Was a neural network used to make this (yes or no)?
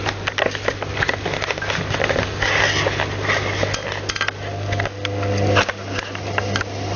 no